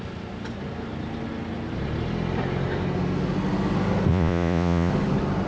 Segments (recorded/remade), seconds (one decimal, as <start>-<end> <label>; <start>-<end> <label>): 0.0-4.1 recorded; 4.1-4.9 remade; 4.9-5.5 recorded